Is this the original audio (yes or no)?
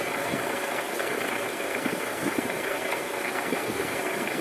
no